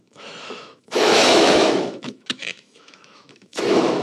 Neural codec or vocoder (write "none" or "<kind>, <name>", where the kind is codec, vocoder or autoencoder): autoencoder, DAC-VAE